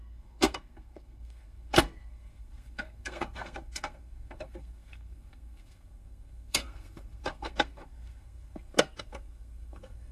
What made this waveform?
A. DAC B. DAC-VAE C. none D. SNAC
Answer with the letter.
D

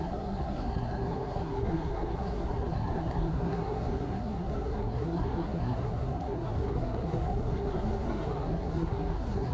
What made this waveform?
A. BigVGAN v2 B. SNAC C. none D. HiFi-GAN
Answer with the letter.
B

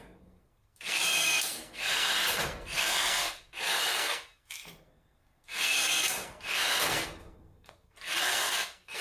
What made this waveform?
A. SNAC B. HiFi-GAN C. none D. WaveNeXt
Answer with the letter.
A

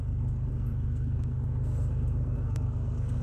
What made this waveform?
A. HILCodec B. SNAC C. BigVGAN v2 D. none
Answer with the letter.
B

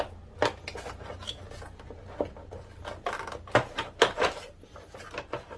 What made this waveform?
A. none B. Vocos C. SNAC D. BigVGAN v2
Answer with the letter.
A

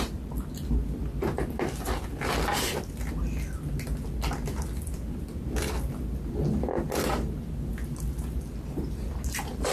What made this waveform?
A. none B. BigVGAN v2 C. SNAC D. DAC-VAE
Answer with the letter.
A